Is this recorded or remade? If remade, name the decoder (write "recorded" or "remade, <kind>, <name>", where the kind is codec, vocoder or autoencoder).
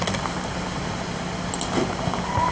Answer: recorded